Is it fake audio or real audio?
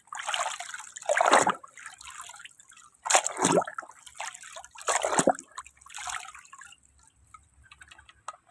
real